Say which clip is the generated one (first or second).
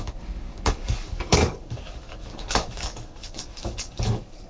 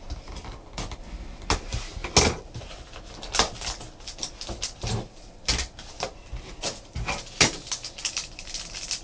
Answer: first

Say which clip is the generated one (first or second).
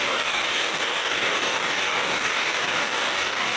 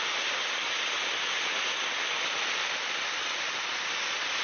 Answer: first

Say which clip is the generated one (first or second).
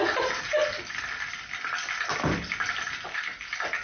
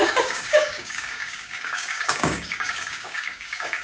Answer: second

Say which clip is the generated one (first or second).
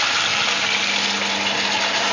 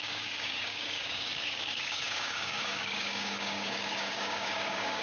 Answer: second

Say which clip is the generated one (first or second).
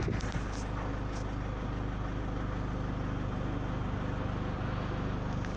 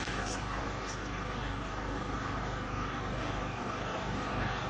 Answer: second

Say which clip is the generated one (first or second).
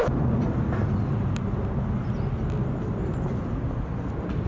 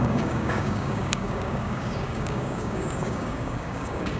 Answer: second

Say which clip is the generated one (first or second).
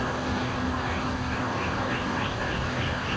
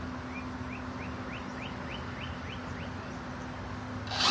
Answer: first